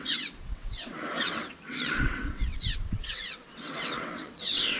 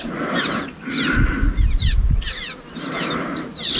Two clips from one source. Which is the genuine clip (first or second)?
second